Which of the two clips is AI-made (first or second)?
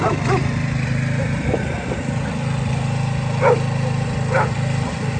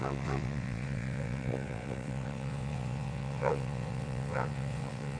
second